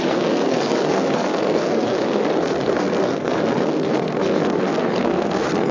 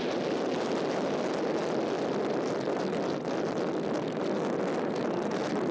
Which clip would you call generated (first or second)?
first